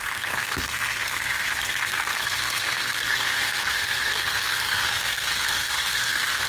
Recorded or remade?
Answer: remade